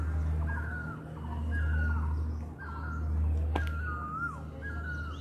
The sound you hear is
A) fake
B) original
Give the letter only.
B